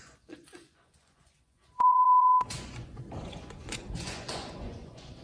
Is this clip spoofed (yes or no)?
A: yes